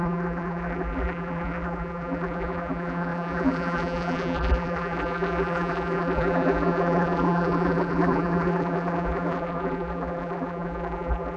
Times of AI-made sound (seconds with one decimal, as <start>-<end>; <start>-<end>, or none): 0.0-11.4